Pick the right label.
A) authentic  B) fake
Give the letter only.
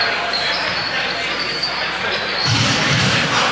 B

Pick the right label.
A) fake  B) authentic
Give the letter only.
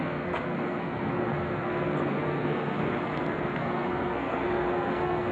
A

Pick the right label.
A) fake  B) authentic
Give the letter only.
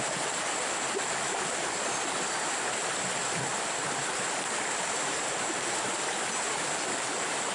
B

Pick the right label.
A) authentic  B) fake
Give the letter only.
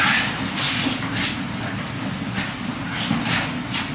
A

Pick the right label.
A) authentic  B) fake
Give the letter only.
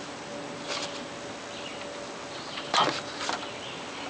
A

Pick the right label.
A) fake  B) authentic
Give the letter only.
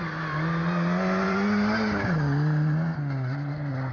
B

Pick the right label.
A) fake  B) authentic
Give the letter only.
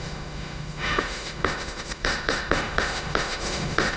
A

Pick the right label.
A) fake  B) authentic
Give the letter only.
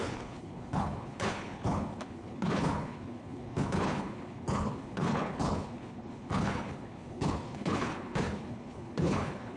A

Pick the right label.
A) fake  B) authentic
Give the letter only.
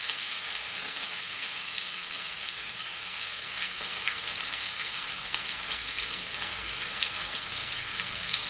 A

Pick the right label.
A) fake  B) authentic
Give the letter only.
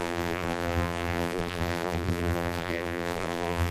A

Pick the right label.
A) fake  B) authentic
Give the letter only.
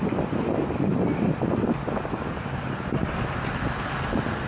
B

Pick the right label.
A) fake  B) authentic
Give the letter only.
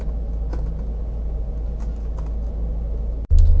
B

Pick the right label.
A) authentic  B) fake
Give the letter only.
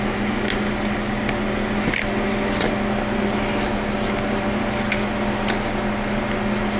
A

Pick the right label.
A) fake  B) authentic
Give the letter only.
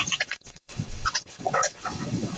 A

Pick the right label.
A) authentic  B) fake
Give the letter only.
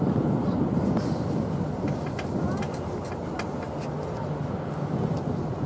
A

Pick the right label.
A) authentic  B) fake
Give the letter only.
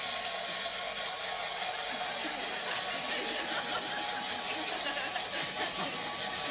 A